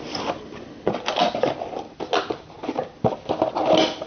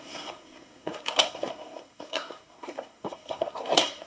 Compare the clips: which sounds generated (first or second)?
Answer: second